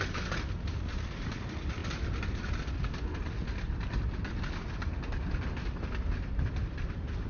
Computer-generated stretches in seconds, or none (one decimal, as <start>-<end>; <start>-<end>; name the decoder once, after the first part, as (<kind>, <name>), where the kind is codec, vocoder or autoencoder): none